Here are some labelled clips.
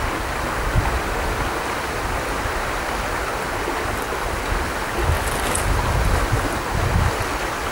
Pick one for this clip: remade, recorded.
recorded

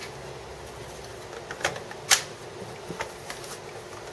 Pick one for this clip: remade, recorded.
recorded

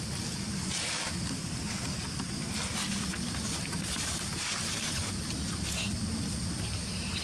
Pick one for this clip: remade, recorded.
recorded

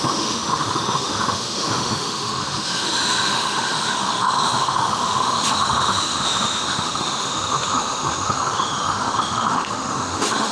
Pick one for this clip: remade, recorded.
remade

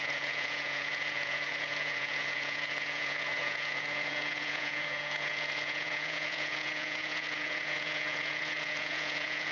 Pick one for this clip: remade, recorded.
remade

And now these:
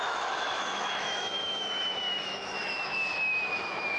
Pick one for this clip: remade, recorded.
remade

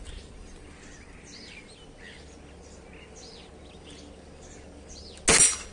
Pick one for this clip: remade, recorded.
recorded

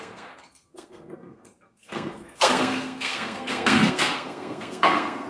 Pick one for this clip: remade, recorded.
remade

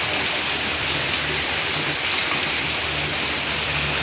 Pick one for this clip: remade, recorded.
remade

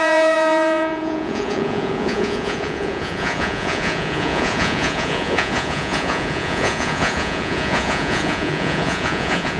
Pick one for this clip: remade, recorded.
remade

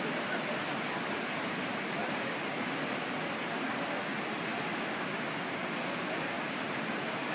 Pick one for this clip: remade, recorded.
recorded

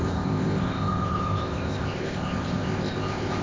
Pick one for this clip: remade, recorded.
remade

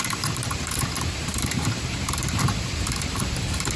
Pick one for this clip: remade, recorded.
remade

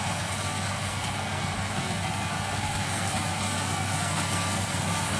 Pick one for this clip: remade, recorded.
remade